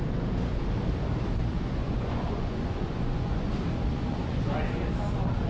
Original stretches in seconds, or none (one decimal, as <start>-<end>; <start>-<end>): 0.0-1.5; 3.5-3.9; 4.7-5.5